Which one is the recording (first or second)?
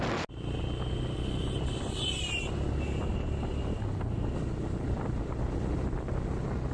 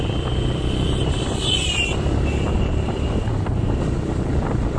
first